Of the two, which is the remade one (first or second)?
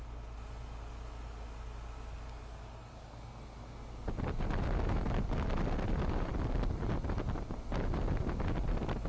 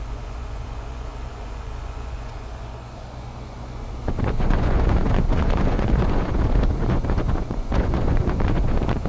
second